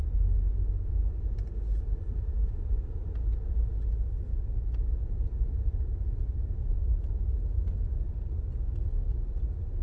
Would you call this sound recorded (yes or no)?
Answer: yes